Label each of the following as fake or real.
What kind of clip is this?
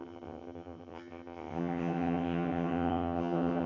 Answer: fake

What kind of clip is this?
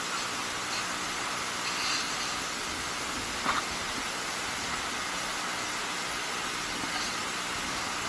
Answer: real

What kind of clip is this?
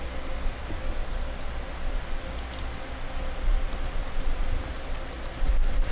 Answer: real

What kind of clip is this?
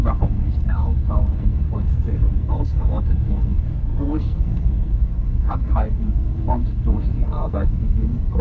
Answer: fake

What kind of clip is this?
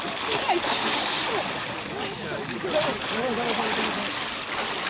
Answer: real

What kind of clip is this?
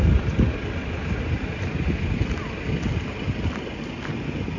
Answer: real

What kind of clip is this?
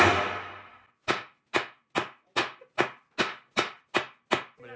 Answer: real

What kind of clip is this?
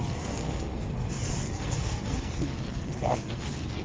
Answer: fake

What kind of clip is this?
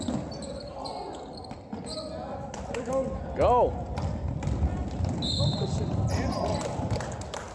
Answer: real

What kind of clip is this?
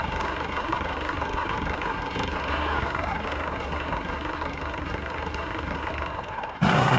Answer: fake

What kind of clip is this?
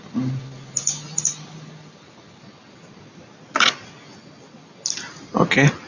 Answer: real